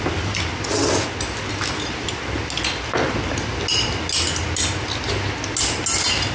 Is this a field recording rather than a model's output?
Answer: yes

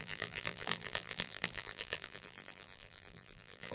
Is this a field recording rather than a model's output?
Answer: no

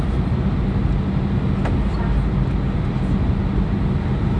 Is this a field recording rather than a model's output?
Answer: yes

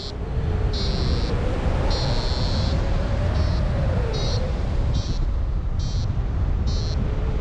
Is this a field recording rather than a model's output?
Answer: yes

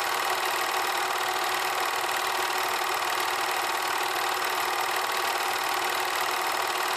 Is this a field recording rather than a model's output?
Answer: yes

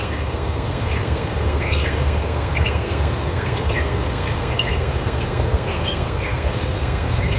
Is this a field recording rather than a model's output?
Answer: no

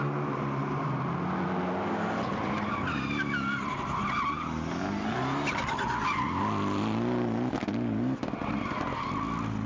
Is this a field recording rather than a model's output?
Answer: yes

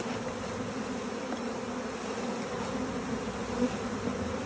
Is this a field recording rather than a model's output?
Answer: yes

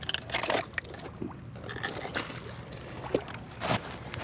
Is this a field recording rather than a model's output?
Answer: yes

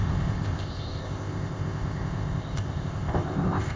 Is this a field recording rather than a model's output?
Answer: no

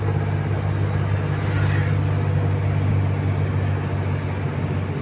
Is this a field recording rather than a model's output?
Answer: yes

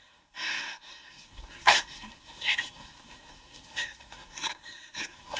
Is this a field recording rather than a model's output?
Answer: no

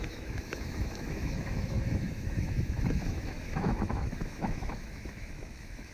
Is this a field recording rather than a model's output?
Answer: no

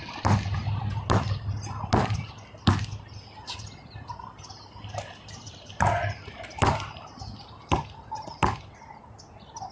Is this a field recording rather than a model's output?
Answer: yes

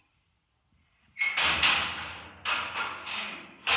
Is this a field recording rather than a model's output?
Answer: yes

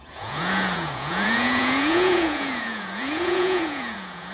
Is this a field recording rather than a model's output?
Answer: no